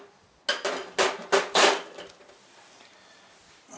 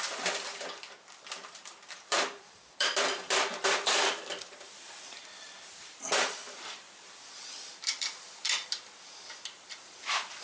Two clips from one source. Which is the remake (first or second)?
second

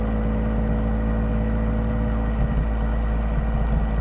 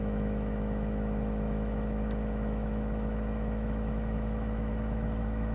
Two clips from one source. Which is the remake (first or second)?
second